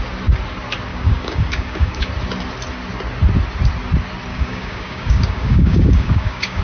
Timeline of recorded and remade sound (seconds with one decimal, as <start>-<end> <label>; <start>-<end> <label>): 0.0-0.9 recorded; 0.9-2.1 remade; 2.1-4.3 recorded; 4.3-6.6 remade